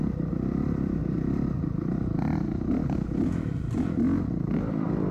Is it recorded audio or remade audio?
remade